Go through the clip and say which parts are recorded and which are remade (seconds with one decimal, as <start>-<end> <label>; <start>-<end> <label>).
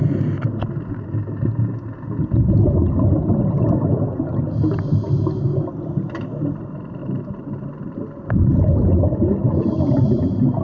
0.0-7.0 recorded; 7.0-8.4 remade; 8.4-9.4 recorded; 9.4-10.6 remade